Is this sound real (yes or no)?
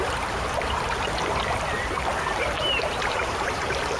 no